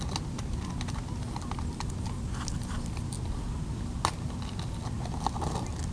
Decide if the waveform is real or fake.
real